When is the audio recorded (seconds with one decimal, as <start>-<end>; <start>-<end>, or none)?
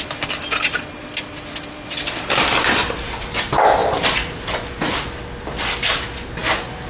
0.0-1.0; 2.4-3.8; 5.0-6.9